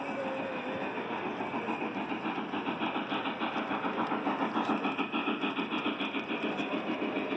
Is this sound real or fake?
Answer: real